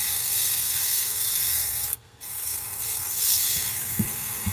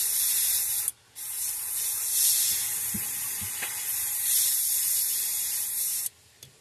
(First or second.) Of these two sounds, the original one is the second